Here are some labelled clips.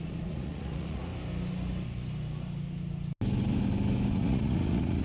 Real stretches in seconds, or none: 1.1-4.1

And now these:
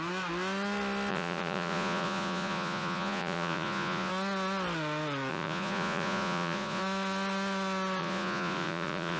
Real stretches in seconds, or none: 0.0-1.1; 4.1-5.3; 6.8-8.0

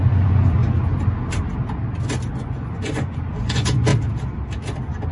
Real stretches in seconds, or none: 0.6-2.3; 3.9-5.1

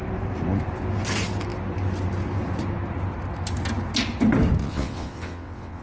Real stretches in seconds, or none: 0.0-4.6